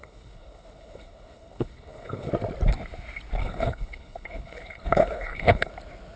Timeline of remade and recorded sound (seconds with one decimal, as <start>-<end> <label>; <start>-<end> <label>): 0.0-2.3 remade; 2.3-3.4 recorded; 3.4-5.7 remade; 5.7-6.2 recorded

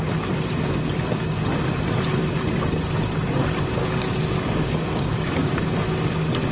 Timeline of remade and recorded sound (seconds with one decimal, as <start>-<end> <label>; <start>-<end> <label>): 0.0-3.8 recorded; 3.8-5.8 remade; 5.8-6.5 recorded

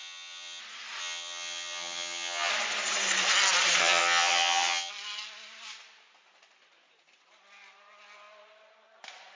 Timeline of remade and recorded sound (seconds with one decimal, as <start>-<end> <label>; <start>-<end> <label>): 0.0-0.6 remade; 0.6-1.0 recorded; 1.0-2.5 remade; 2.5-3.8 recorded; 3.8-4.9 remade; 4.9-9.4 recorded

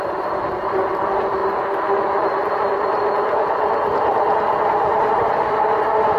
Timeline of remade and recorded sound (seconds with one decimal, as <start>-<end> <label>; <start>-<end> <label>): 0.0-1.4 remade; 1.4-5.1 recorded; 5.1-6.2 remade

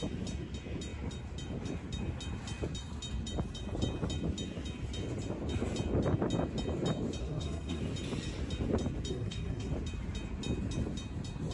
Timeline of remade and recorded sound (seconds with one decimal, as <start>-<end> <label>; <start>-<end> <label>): 0.0-7.2 recorded; 7.2-7.8 remade; 7.8-9.1 recorded; 9.1-9.7 remade; 9.7-11.5 recorded

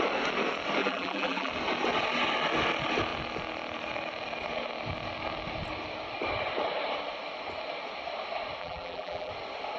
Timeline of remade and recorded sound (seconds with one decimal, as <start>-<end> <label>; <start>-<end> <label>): 0.0-0.8 recorded; 0.8-1.5 remade; 1.5-8.6 recorded; 8.6-9.3 remade; 9.3-9.8 recorded